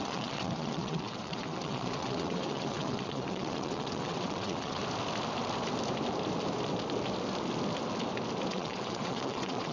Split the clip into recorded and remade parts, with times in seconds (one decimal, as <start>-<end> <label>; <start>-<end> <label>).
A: 0.0-4.8 remade; 4.8-8.5 recorded; 8.5-9.7 remade